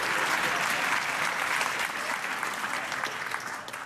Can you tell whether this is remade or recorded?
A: recorded